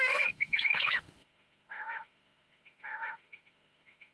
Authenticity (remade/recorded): remade